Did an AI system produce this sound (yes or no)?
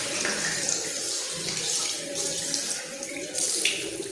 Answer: no